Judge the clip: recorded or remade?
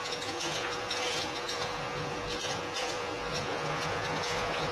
remade